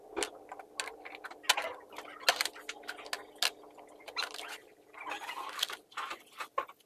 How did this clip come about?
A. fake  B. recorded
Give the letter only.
B